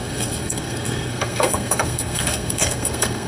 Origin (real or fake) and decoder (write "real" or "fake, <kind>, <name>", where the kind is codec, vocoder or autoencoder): fake, codec, SNAC